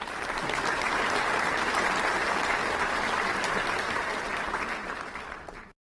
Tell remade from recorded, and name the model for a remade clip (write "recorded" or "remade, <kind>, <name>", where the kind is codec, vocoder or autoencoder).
recorded